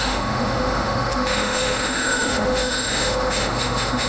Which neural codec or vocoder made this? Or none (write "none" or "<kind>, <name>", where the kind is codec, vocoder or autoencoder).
autoencoder, DAC-VAE